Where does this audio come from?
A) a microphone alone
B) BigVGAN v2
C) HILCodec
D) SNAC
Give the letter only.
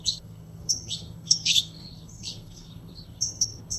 D